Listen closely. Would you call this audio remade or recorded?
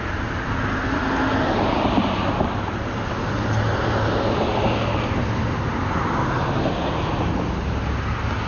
recorded